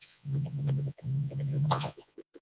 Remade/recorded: remade